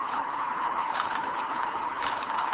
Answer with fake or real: fake